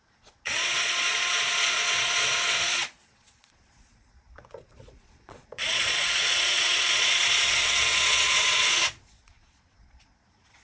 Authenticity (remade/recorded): remade